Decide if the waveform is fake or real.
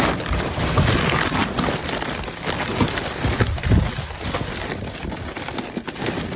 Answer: real